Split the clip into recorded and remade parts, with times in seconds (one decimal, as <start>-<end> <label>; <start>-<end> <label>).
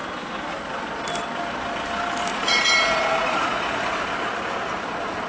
0.0-2.3 recorded; 2.3-3.9 remade; 3.9-5.3 recorded